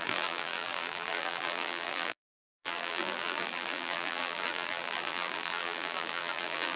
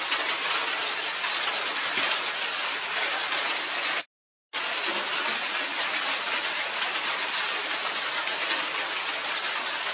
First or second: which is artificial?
first